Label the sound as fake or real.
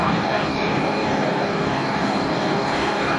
fake